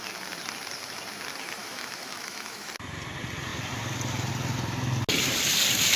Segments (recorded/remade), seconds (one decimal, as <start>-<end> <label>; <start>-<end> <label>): 0.0-1.6 recorded; 1.6-2.7 remade; 2.7-6.0 recorded